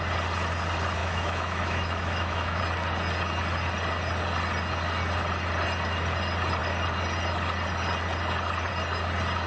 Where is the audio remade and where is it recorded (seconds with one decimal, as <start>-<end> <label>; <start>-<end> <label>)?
0.0-1.0 recorded; 1.0-2.6 remade; 2.6-9.5 recorded